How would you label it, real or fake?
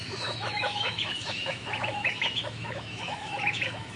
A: fake